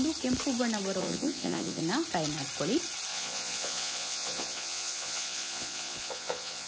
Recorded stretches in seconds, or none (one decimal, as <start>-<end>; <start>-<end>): 0.0-1.0; 1.8-3.1